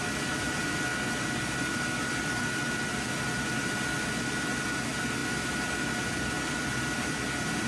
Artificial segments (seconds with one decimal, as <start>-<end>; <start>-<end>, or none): 0.0-0.9; 4.7-5.2; 6.7-7.7